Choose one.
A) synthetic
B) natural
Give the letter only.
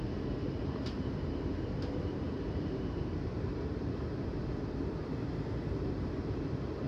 A